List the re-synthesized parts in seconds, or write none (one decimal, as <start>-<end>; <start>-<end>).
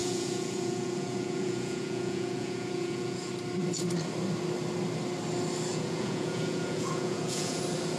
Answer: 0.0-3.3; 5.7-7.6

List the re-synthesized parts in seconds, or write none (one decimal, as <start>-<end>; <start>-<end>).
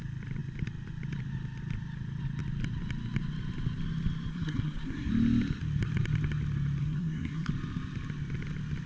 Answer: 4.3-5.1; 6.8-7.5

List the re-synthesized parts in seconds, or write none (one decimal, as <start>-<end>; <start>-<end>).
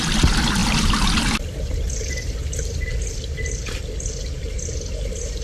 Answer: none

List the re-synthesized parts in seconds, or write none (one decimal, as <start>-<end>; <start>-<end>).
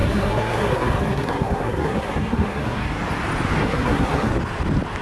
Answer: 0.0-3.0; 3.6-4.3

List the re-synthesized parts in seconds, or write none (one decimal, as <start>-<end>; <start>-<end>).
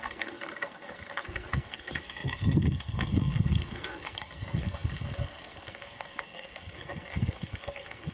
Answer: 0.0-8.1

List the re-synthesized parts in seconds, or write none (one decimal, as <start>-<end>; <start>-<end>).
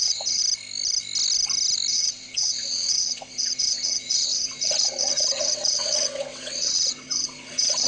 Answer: 0.0-0.4; 1.9-7.9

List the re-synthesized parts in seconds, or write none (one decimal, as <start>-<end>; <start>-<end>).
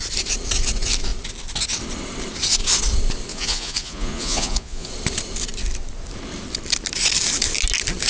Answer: 3.3-4.9